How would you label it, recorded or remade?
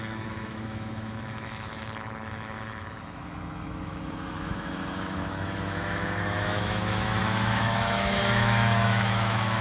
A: remade